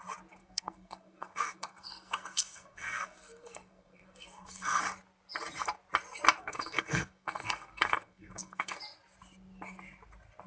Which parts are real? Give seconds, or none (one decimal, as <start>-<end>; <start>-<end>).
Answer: 0.0-0.4; 4.8-6.4; 8.8-10.5